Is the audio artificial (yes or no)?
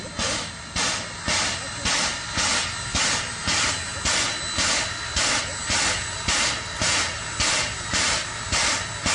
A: no